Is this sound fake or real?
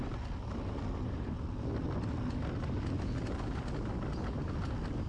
real